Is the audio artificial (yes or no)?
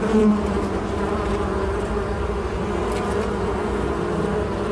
no